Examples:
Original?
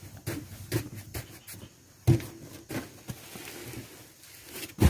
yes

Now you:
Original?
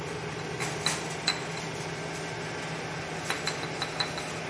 yes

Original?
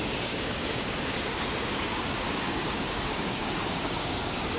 no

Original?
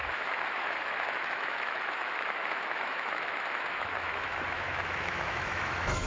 no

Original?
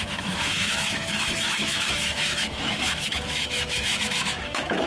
no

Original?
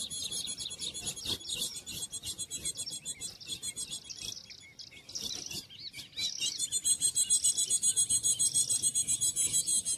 yes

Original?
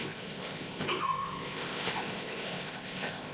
no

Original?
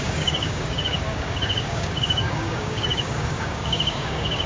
no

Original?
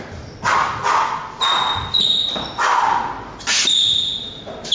yes